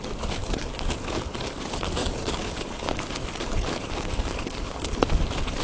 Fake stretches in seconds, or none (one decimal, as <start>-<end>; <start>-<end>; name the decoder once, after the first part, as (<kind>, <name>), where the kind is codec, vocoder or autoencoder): 0.4-1.6 (codec, DAC); 2.0-5.1